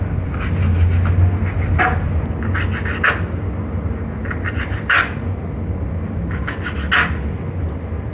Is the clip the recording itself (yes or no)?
yes